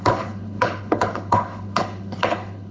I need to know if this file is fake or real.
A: fake